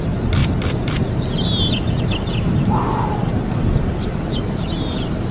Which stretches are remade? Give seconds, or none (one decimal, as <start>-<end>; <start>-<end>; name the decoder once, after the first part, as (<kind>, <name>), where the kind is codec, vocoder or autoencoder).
3.3-5.3 (vocoder, BigVGAN v2)